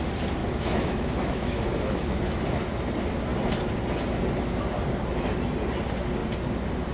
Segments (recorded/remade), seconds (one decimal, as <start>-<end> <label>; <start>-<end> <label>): 0.0-0.4 recorded; 0.4-2.4 remade; 2.4-6.9 recorded